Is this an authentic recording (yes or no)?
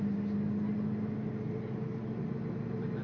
yes